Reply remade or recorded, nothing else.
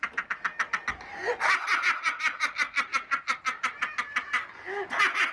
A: recorded